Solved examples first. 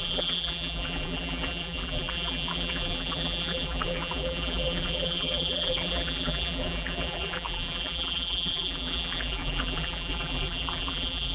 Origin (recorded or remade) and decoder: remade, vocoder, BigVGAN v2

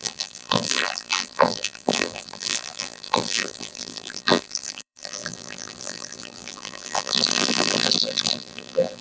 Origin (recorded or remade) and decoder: remade, vocoder, BigVGAN v2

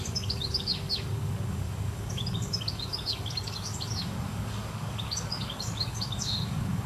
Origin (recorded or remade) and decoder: remade, codec, DAC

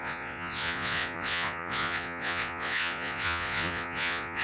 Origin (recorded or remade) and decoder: remade, vocoder, Vocos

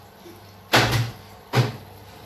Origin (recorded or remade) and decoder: recorded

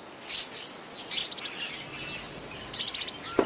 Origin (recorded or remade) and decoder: recorded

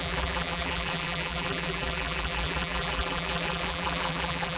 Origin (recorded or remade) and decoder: remade, vocoder, BigVGAN v2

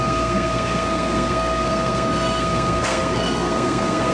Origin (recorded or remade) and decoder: remade, codec, SNAC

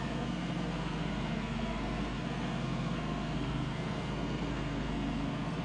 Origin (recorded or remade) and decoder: remade, codec, SNAC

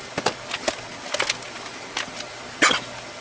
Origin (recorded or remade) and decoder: recorded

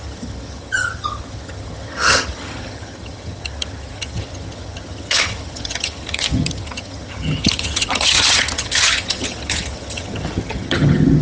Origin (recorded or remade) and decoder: remade, vocoder, HiFi-GAN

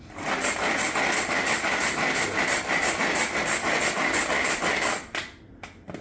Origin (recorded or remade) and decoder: recorded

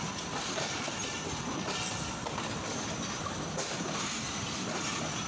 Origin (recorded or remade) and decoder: remade, vocoder, BigVGAN v2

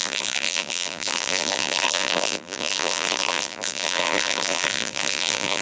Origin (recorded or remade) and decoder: remade, vocoder, BigVGAN v2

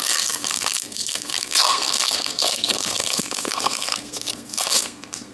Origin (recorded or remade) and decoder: remade, codec, SNAC